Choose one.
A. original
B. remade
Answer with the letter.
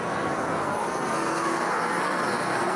B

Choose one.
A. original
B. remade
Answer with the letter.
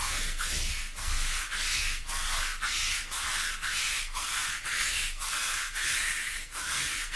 B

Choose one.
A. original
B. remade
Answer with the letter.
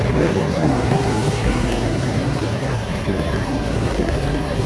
B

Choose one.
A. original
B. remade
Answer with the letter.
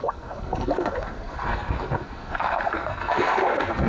B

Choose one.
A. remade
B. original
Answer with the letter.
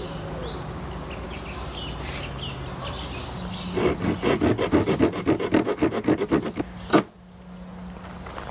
B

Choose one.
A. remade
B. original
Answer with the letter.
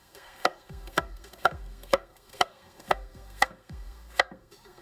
A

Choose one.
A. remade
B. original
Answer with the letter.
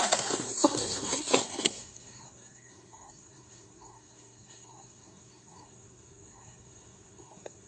A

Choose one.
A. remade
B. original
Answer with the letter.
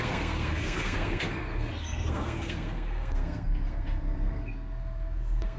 A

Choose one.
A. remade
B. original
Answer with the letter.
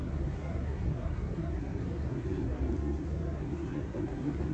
A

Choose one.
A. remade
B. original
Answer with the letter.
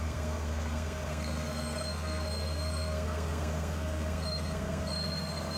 A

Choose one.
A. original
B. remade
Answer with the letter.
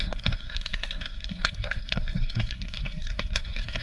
B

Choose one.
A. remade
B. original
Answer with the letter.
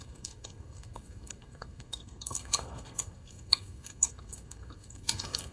A